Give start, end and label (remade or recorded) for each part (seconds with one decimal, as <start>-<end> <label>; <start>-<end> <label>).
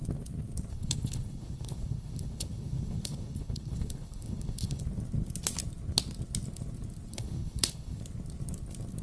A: 0.0-0.7 recorded; 0.7-4.8 remade; 4.8-7.1 recorded; 7.1-8.0 remade; 8.0-9.0 recorded